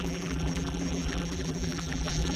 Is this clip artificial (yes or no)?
yes